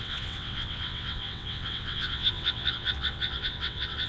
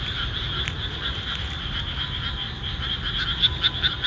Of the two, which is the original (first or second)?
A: second